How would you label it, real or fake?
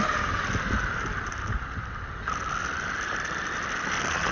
real